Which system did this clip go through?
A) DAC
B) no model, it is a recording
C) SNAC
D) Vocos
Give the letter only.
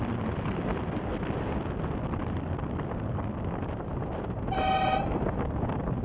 B